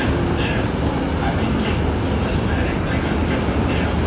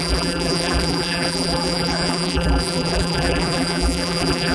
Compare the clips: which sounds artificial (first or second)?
second